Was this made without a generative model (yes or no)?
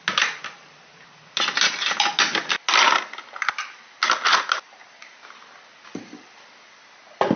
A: yes